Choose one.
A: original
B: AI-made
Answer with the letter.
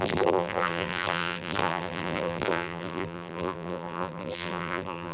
B